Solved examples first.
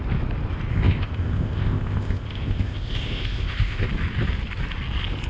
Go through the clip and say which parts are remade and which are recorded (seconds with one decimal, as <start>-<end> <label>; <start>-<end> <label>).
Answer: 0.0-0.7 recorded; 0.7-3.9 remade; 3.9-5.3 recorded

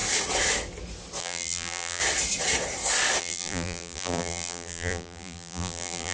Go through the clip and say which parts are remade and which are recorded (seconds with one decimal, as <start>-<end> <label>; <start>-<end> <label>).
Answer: 0.0-1.2 recorded; 1.2-2.0 remade; 2.0-3.2 recorded; 3.2-6.1 remade

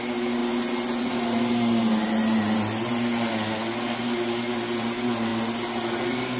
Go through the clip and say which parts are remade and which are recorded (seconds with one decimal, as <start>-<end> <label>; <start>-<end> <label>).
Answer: 0.0-6.4 recorded

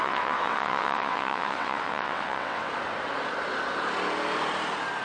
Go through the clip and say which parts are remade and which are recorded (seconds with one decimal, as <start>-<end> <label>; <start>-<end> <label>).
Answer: 0.0-2.7 remade; 2.7-5.0 recorded

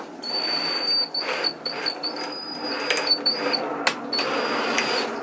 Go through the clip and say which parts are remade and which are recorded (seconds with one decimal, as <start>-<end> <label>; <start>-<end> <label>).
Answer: 0.0-5.2 recorded